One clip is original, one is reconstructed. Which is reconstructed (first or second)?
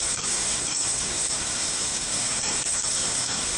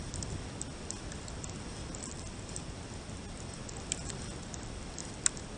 first